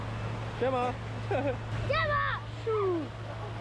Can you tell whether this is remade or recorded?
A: recorded